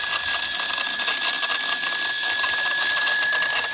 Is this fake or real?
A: real